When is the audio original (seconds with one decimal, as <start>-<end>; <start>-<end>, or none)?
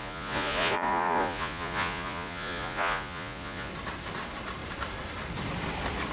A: 3.7-6.1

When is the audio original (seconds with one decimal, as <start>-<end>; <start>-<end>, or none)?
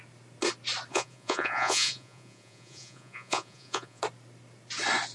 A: 0.0-0.9; 4.0-5.1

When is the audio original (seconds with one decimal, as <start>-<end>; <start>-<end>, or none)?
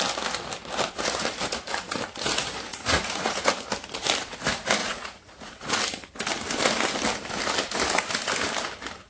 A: 0.0-2.7; 3.4-4.8; 5.8-9.1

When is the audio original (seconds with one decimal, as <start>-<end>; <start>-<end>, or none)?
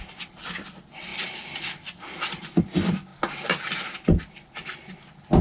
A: 0.0-5.4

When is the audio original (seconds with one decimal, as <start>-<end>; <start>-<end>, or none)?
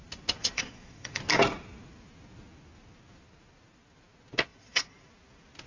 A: 0.0-0.4; 1.2-4.5; 5.1-5.7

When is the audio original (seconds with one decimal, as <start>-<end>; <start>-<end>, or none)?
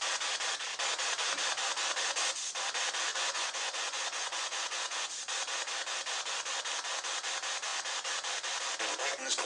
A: 0.0-3.1; 5.1-9.5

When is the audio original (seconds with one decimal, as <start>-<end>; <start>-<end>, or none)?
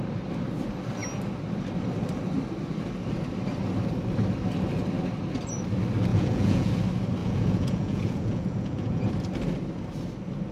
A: 0.0-6.1; 6.7-7.2; 9.1-10.5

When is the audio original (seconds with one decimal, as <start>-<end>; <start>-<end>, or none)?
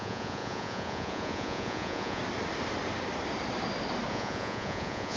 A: 2.2-4.1